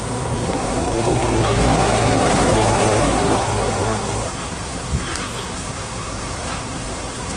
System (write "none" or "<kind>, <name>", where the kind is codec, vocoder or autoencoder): codec, SNAC